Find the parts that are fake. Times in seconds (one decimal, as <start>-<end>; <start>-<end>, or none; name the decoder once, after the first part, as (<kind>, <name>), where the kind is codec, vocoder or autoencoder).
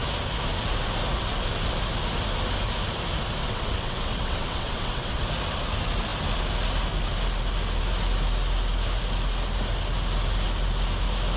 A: 3.4-5.2 (vocoder, WaveNeXt)